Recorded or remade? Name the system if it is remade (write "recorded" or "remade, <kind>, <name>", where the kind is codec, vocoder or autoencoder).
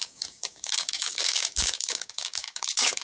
remade, codec, DAC